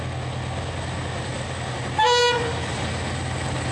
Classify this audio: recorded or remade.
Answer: recorded